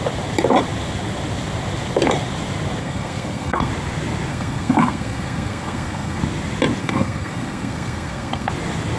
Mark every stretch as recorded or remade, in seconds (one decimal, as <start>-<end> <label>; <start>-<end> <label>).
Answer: 0.0-2.8 recorded; 2.8-3.7 remade; 3.7-4.3 recorded; 4.3-6.2 remade; 6.2-6.8 recorded; 6.8-8.5 remade; 8.5-9.0 recorded